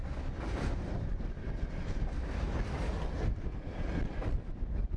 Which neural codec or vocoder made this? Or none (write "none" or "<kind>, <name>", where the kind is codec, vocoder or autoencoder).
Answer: none